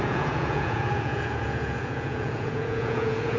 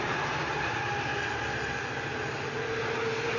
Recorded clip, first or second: second